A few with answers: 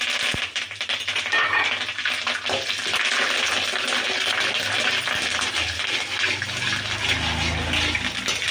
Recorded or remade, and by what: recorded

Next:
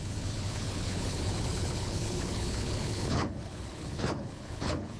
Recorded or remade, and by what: remade, codec, HILCodec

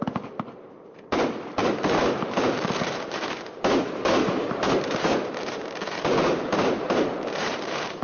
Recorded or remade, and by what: remade, vocoder, BigVGAN v2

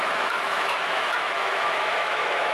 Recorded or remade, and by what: remade, autoencoder, DAC-VAE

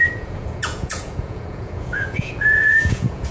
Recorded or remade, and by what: remade, vocoder, Vocos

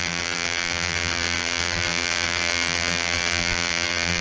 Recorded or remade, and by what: remade, vocoder, BigVGAN v2